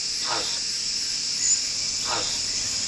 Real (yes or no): yes